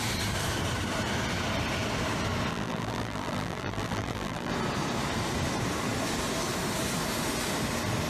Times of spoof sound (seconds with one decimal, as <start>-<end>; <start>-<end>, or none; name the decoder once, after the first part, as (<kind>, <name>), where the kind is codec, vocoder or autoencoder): 2.5-4.5 (vocoder, BigVGAN v2)